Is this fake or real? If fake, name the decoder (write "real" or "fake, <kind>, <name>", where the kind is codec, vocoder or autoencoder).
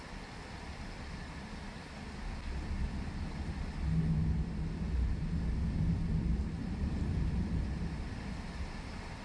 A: real